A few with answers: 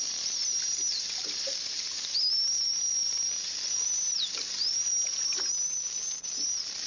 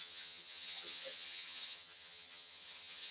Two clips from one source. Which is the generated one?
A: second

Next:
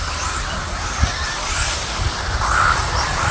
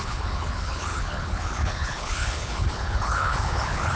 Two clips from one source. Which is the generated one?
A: second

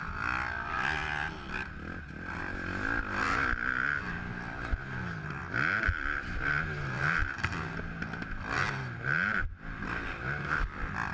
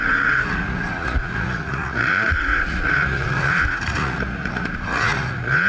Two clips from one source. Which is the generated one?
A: second